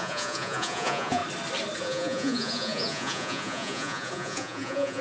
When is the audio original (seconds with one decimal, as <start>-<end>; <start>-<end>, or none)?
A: 1.2-1.8